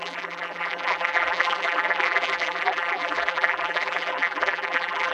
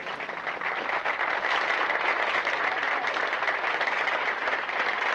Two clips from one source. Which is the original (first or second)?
second